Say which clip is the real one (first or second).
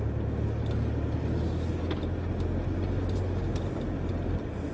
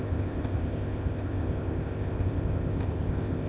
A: first